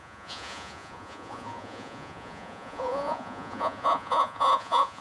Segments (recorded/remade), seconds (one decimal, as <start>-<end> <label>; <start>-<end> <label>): 0.0-5.0 remade